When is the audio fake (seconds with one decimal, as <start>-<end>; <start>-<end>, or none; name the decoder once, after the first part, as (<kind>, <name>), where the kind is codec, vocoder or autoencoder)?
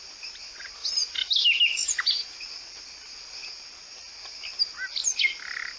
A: none